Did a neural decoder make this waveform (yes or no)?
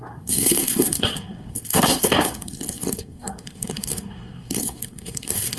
yes